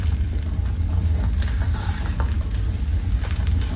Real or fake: real